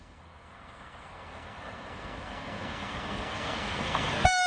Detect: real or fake fake